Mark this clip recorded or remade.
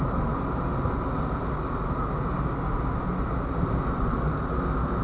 recorded